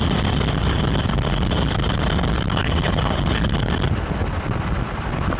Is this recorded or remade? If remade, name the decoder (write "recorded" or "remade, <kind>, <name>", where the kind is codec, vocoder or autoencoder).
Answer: recorded